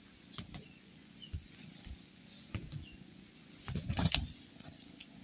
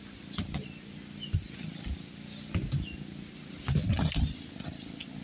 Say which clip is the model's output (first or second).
first